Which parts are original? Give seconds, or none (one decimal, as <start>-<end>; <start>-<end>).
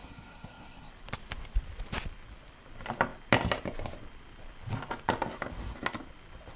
0.9-6.6